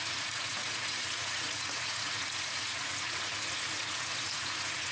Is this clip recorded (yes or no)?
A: no